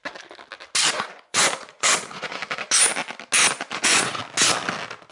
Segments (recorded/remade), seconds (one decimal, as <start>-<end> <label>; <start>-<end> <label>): 0.0-0.9 recorded; 0.9-2.4 remade; 2.4-3.6 recorded; 3.6-4.2 remade; 4.2-5.1 recorded